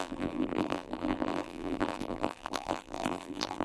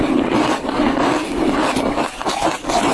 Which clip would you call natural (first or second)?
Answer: second